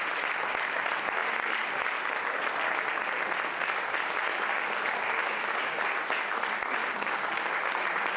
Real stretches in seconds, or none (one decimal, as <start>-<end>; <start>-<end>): 0.0-5.2; 5.8-6.8; 7.5-8.2